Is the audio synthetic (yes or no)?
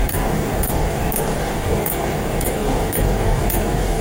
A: yes